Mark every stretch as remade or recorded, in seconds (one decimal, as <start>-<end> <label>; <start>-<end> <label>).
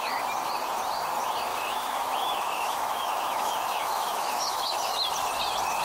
0.0-1.5 recorded; 1.5-5.0 remade; 5.0-5.8 recorded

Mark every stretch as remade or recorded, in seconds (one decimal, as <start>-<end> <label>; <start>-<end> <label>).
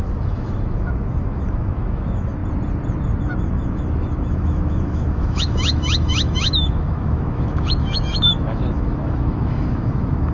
0.0-2.4 remade; 2.4-3.2 recorded; 3.2-10.3 remade